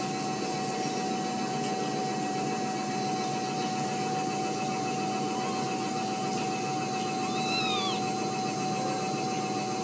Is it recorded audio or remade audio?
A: recorded